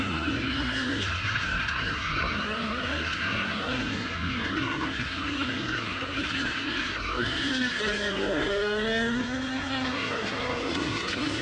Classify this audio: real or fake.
fake